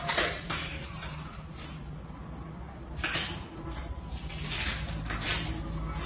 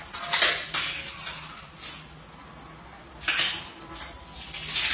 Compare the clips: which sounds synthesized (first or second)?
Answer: first